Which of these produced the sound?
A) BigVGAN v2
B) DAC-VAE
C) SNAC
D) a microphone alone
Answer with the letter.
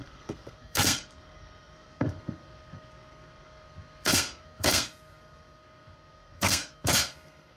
C